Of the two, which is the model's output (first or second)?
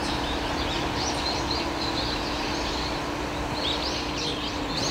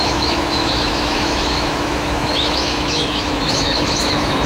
second